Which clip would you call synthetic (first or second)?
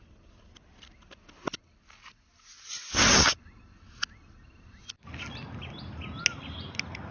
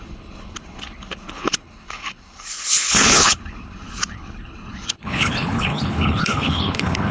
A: second